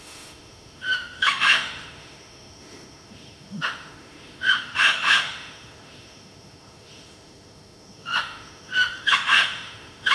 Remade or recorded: remade